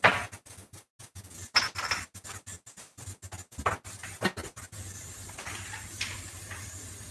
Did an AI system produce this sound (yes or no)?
no